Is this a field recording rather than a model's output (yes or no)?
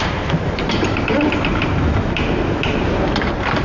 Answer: no